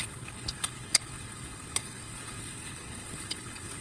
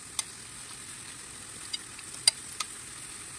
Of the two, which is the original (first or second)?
second